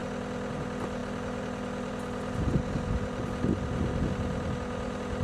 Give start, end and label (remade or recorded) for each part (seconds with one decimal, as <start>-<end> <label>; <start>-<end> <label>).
0.0-5.2 recorded